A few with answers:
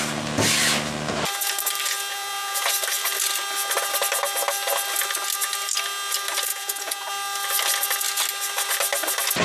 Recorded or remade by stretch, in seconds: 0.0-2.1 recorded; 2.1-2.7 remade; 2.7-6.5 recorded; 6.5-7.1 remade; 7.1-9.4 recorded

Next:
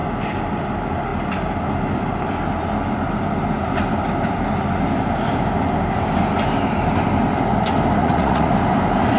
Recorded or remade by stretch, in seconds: 0.0-8.0 recorded; 8.0-8.5 remade; 8.5-9.2 recorded

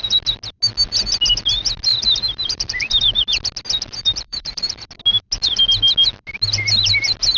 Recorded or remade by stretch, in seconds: 0.0-1.9 recorded; 1.9-3.0 remade; 3.0-4.0 recorded; 4.0-4.8 remade; 4.8-7.4 recorded

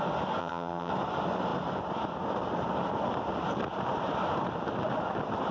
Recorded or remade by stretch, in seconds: 0.0-0.4 recorded; 0.4-0.9 remade; 0.9-5.5 recorded

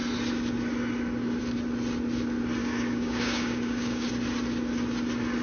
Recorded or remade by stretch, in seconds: 0.0-2.6 recorded; 2.6-4.1 remade; 4.1-5.4 recorded

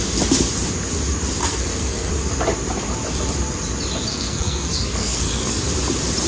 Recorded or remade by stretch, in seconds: 0.0-1.4 recorded; 1.4-2.1 remade; 2.1-4.1 recorded; 4.1-5.6 remade; 5.6-6.3 recorded

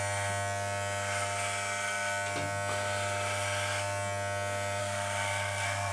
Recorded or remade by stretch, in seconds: 0.0-4.8 recorded; 4.8-5.9 remade